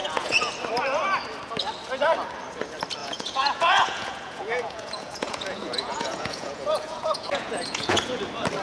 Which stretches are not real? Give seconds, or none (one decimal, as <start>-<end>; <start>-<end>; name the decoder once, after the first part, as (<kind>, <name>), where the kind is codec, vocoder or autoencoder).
0.0-0.5 (vocoder, Vocos); 3.0-8.2